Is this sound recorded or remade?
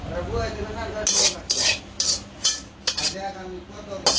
recorded